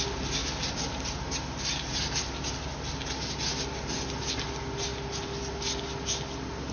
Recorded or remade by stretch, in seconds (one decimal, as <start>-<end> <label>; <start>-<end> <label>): 0.0-0.4 recorded; 0.4-2.9 remade; 2.9-6.7 recorded